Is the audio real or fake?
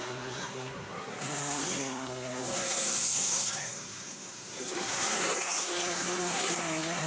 fake